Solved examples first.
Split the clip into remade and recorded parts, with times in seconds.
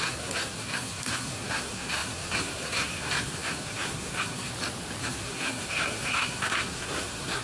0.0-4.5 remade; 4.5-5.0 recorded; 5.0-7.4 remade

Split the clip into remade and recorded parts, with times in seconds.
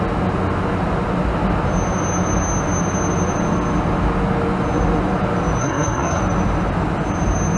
0.0-5.6 recorded; 5.6-6.2 remade; 6.2-7.6 recorded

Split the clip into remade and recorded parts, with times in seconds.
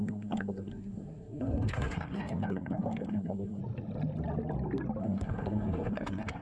0.0-3.6 remade; 3.6-5.0 recorded; 5.0-6.4 remade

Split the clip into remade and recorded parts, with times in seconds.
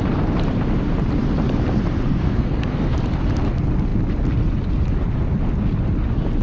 0.0-2.1 recorded; 2.1-2.9 remade; 2.9-6.4 recorded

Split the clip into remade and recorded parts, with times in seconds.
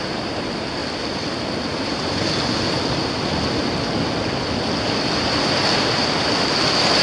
0.0-7.0 recorded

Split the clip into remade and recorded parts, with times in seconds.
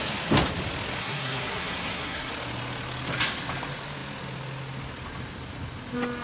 0.0-1.0 recorded; 1.0-2.3 remade; 2.3-6.2 recorded